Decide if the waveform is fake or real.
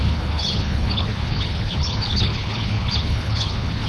fake